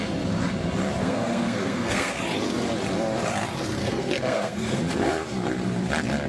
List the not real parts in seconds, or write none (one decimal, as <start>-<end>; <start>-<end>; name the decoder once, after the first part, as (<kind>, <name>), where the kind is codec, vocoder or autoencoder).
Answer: 1.0-2.2 (codec, SNAC); 3.8-4.8